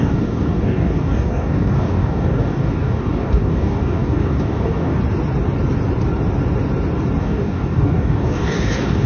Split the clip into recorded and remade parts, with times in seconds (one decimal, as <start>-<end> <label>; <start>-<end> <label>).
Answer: 0.0-5.0 remade; 5.0-7.2 recorded; 7.2-9.1 remade